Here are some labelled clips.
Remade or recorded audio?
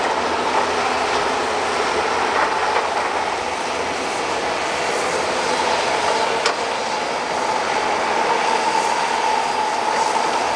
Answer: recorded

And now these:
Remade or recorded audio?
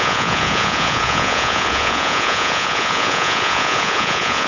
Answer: remade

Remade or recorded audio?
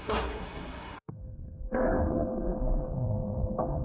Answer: remade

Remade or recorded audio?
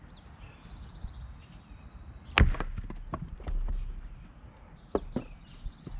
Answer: recorded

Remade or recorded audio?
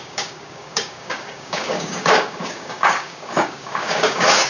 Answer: remade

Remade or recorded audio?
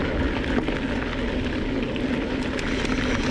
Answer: recorded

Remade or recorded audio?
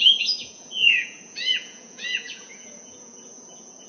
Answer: remade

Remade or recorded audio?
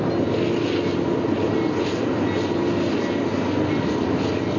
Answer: recorded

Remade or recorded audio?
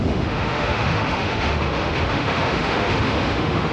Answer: remade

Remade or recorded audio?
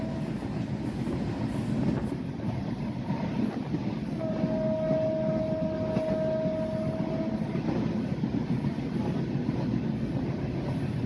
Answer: recorded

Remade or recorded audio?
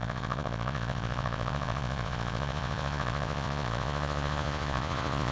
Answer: remade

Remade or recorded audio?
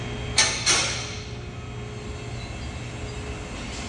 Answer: recorded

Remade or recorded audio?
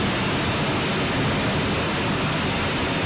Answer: recorded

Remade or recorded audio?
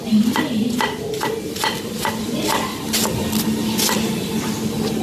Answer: recorded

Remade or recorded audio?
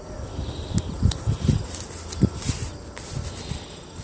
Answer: recorded